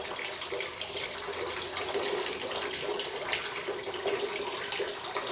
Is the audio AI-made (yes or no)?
no